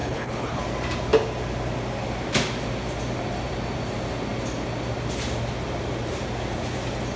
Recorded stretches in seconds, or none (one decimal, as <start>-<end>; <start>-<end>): 0.6-7.2